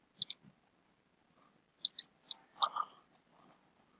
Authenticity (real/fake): real